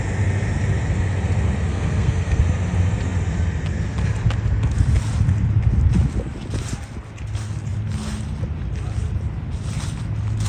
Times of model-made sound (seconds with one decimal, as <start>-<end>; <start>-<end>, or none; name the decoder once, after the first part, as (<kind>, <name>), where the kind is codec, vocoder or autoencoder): 1.7-2.4 (codec, SNAC)

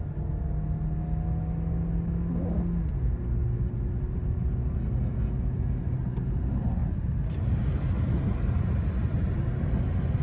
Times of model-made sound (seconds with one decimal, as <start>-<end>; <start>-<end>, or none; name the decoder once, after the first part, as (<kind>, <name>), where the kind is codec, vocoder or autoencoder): none

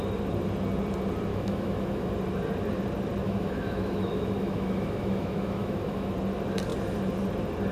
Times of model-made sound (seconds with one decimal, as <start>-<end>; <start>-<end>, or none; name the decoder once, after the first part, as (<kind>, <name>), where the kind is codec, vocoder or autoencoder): 1.3-2.1 (autoencoder, DAC-VAE); 3.2-6.1